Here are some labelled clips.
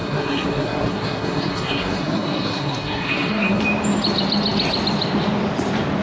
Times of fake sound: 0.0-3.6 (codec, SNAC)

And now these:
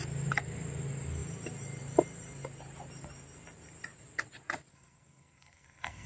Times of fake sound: 4.7-6.1 (codec, SNAC)

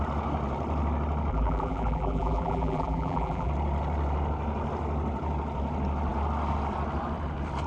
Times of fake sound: 1.3-3.5 (vocoder, BigVGAN v2)

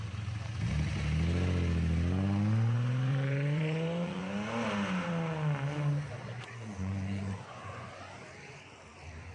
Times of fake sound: 3.1-4.2 (vocoder, Vocos); 6.2-7.9

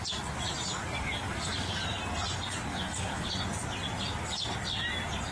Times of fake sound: 0.8-2.0 (codec, DAC); 2.7-3.3

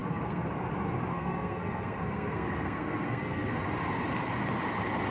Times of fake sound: 0.0-0.5 (codec, SNAC); 1.1-3.6